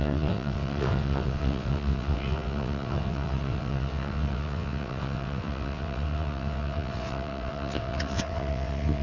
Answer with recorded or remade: remade